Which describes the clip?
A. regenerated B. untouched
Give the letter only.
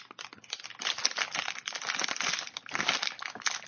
B